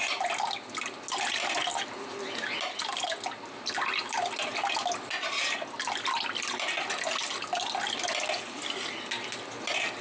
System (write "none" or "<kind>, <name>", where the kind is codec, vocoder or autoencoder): none